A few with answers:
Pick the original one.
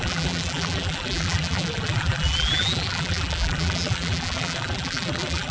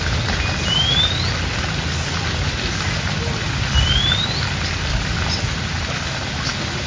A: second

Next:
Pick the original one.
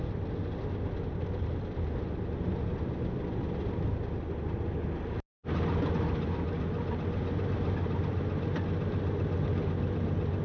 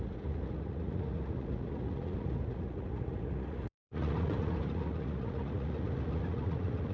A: first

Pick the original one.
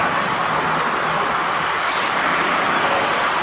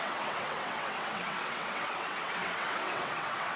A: first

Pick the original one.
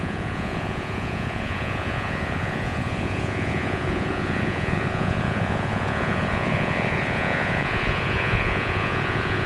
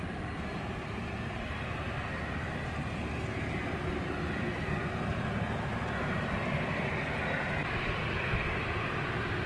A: second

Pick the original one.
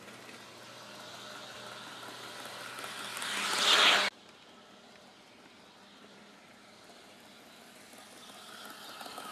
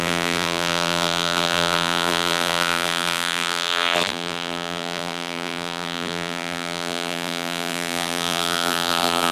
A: first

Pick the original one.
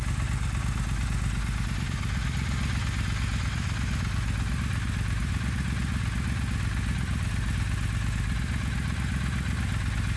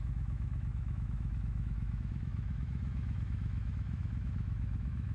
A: first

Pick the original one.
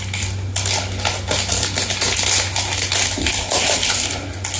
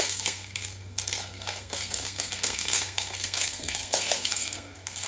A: first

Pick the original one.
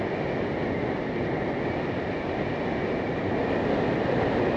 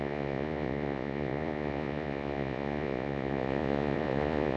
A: first